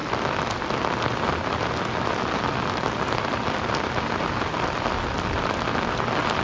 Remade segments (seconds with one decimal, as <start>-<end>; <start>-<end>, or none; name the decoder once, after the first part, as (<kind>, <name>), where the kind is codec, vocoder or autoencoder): none